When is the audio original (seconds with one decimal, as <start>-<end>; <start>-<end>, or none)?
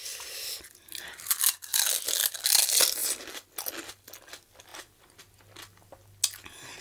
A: 0.0-6.8